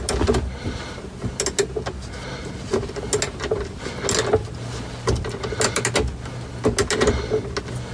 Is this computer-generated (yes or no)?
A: no